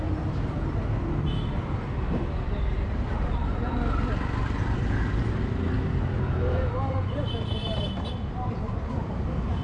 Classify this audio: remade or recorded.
remade